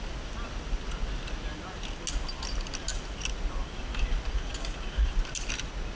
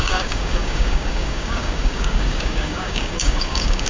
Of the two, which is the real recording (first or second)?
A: first